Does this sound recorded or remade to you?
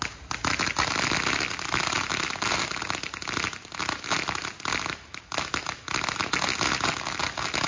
recorded